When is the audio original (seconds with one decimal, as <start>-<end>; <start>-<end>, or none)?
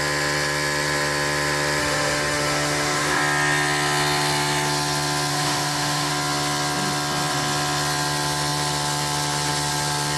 0.0-1.8; 3.2-5.3; 6.1-10.2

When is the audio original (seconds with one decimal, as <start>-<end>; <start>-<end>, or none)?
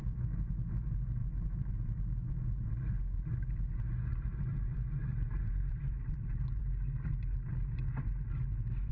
0.0-4.5; 6.6-8.9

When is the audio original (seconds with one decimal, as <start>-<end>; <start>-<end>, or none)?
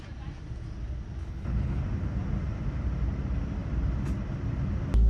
0.0-1.2; 1.8-5.1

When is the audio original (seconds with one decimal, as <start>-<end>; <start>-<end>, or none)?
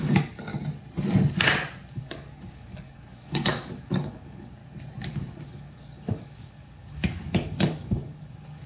0.5-1.9; 4.6-5.1